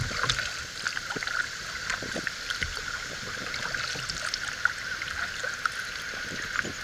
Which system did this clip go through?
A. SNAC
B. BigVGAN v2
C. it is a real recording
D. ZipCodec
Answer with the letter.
C